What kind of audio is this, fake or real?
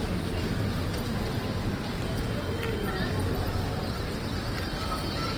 real